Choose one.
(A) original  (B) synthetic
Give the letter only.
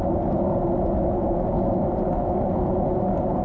A